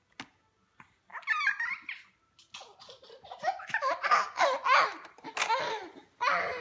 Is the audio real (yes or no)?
yes